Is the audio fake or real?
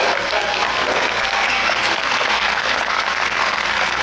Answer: fake